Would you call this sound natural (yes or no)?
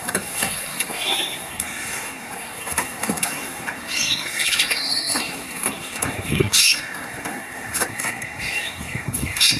no